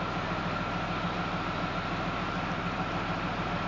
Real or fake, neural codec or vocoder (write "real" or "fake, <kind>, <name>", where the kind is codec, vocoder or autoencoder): real